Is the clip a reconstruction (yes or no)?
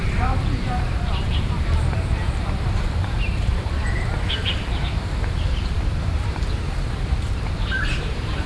yes